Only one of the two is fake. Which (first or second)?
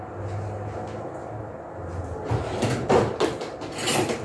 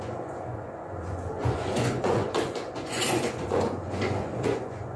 second